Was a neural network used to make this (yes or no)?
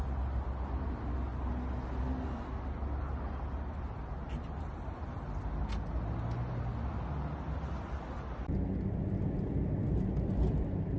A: no